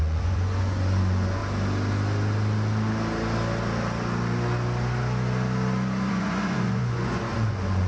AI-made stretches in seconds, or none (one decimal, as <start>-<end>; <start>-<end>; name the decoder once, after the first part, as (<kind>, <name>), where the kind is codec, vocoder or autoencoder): 0.0-1.4 (vocoder, Vocos); 6.1-7.9